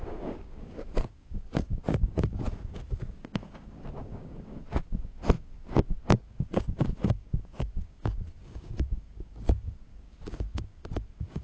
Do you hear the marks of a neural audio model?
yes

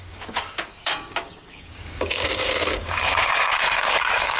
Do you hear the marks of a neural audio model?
yes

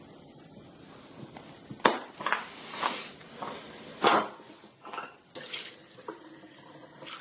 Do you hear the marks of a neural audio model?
no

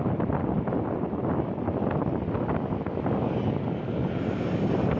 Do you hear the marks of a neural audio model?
no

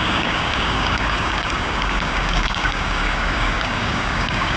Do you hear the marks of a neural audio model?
yes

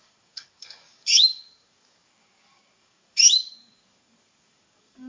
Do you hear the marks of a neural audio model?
yes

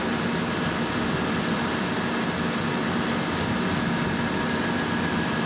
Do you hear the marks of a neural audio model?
no